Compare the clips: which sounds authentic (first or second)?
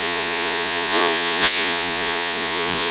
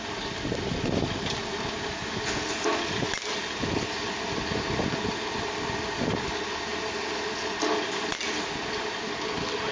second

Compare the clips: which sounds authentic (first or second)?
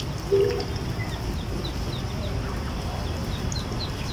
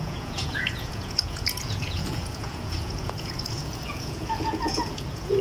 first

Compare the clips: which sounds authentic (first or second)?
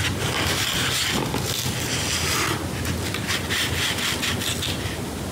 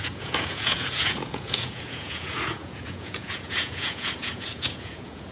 first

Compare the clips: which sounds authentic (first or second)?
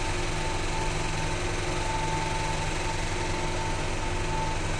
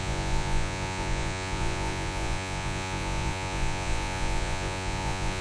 first